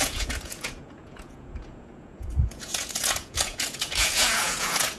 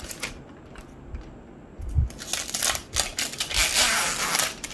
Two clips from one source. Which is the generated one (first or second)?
first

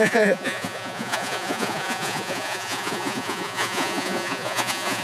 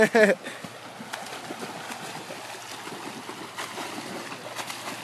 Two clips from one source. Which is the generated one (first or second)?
first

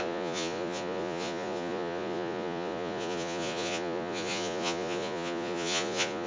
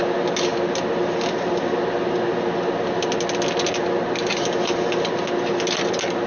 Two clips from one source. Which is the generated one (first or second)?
first